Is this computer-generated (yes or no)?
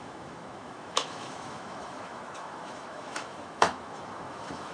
yes